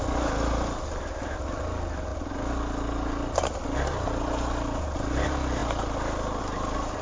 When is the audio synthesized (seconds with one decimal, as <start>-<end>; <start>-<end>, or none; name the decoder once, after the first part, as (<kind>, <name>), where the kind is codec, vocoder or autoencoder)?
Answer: none

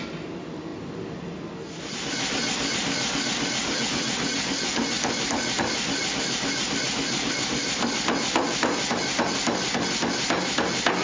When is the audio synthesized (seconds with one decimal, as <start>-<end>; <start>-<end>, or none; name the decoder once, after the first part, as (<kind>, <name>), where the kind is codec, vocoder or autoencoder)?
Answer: none

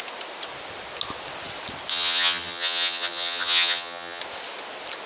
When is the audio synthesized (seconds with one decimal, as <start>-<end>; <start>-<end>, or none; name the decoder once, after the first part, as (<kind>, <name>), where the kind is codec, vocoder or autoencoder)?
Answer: 1.9-4.2 (vocoder, HiFi-GAN)